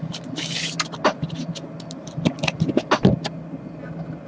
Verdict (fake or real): real